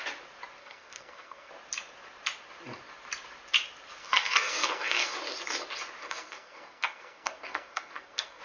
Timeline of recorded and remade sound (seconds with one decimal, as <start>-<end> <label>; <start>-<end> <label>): 0.0-0.6 recorded; 0.6-1.5 remade; 1.5-4.0 recorded; 4.0-5.1 remade; 5.1-6.0 recorded; 6.0-8.4 remade